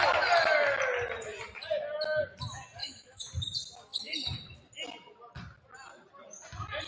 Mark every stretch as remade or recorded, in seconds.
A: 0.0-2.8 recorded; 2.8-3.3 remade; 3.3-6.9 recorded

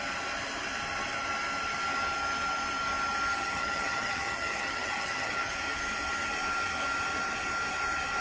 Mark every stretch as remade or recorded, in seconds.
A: 0.0-3.3 recorded; 3.3-5.5 remade; 5.5-8.2 recorded